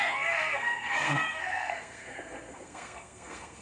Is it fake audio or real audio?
fake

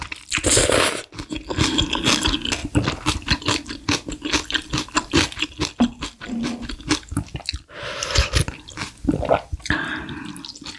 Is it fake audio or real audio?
real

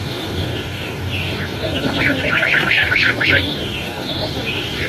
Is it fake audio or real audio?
fake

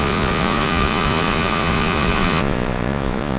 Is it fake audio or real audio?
fake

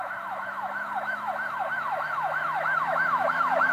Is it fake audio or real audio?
fake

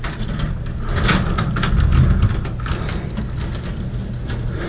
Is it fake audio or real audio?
real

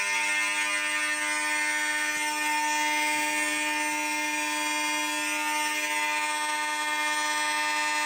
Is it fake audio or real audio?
real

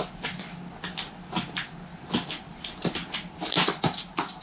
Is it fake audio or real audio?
real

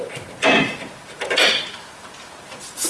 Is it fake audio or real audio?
fake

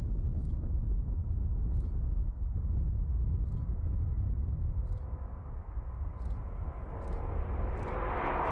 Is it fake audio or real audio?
real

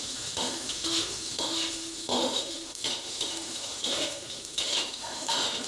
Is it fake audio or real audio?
fake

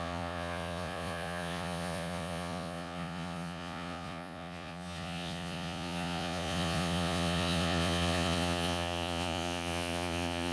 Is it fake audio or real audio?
fake